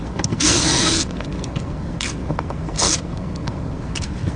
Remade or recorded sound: remade